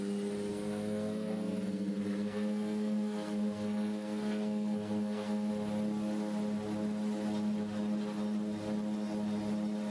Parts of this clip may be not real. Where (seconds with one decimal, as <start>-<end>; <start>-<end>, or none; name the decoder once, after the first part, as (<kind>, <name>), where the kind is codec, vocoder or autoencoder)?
0.5-5.5 (codec, SNAC)

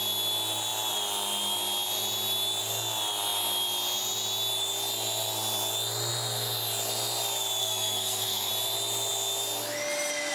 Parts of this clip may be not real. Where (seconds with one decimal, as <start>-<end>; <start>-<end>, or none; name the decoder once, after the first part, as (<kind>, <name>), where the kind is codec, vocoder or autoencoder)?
7.6-8.5 (codec, SNAC)

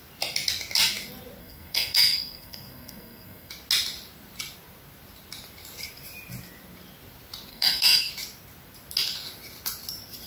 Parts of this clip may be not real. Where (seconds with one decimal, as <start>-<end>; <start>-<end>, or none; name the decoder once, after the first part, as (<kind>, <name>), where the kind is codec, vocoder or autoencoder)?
1.4-3.5 (codec, SNAC); 7.5-8.1

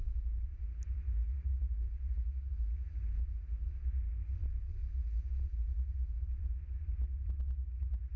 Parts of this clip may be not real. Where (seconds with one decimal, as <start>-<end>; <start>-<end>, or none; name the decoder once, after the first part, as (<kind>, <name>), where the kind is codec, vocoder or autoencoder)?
none

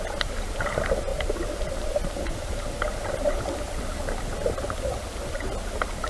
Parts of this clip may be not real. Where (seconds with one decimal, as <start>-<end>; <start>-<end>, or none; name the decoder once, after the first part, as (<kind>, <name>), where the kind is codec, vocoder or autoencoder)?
none